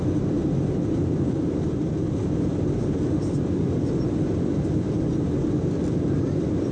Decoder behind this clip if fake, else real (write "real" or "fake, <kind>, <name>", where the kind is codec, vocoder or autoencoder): real